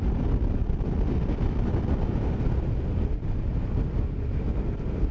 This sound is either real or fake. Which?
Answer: real